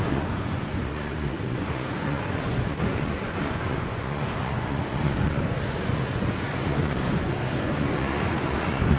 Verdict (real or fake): fake